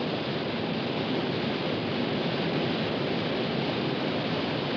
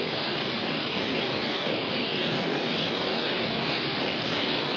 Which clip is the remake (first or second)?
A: second